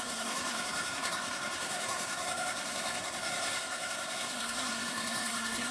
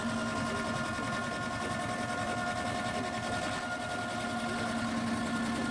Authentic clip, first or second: second